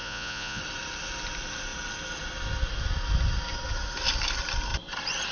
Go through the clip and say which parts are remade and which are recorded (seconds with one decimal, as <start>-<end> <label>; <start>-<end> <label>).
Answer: 0.0-0.6 remade; 0.6-5.3 recorded